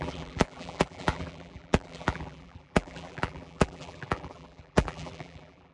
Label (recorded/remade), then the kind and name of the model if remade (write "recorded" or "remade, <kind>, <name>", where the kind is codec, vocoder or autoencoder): remade, vocoder, BigVGAN v2